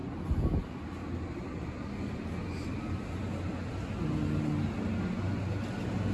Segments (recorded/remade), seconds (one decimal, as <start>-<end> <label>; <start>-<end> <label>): 0.0-6.1 recorded